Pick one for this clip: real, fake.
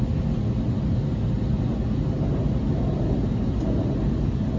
real